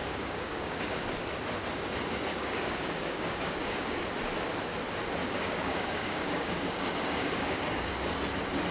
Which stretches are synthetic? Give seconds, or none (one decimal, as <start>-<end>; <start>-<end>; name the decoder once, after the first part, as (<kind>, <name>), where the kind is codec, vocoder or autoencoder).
0.0-1.0 (codec, DAC); 2.3-4.0; 5.2-7.9